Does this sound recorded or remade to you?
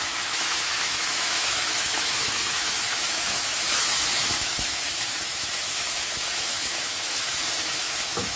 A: remade